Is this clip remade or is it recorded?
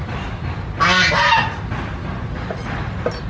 recorded